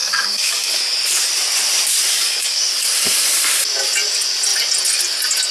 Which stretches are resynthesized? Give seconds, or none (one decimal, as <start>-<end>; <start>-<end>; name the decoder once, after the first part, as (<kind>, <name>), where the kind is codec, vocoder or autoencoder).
0.0-0.8 (codec, DAC); 2.1-2.6